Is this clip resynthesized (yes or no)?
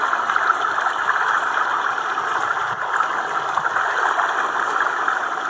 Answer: no